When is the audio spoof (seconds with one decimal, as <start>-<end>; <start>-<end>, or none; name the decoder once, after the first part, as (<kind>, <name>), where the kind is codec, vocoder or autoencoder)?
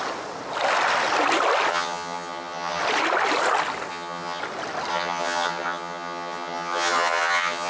1.7-2.8 (vocoder, HiFi-GAN); 3.9-4.4; 4.9-7.7